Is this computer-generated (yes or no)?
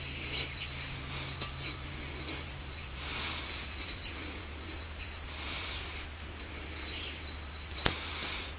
no